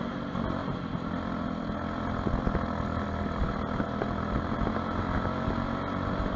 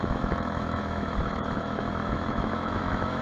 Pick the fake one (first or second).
second